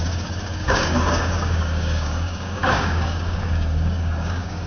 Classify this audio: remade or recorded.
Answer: remade